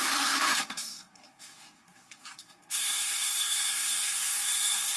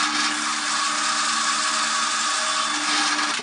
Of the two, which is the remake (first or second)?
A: first